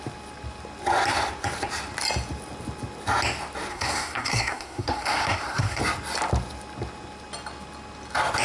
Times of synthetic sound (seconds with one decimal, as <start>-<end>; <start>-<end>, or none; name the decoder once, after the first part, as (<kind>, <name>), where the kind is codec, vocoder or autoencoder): 3.7-5.8 (codec, SNAC)